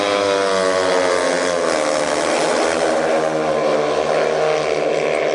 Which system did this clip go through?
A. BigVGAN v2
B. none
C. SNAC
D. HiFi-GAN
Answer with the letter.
B